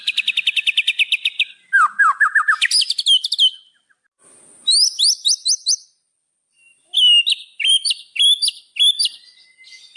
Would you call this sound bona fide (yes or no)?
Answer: yes